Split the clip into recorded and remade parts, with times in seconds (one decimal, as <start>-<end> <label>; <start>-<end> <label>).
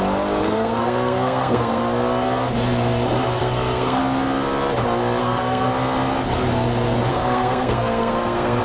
0.0-0.4 recorded; 0.4-1.8 remade; 1.8-3.4 recorded; 3.4-4.0 remade; 4.0-5.2 recorded; 5.2-5.7 remade; 5.7-7.1 recorded; 7.1-8.6 remade